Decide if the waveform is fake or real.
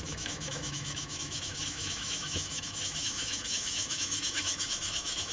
fake